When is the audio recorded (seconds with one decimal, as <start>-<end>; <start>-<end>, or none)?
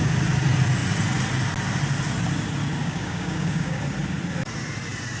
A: 0.0-2.8; 3.8-5.2